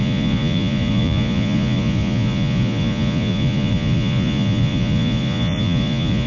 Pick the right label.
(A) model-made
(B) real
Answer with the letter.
A